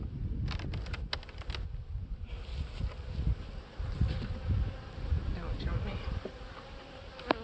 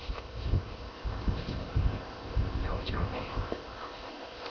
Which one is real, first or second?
first